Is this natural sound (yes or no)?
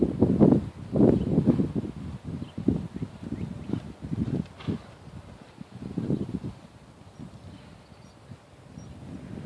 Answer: yes